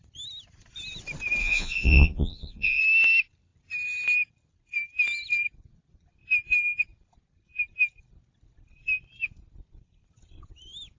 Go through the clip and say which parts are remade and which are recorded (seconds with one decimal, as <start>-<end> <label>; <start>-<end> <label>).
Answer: 0.0-1.4 recorded; 1.4-2.8 remade; 2.8-11.0 recorded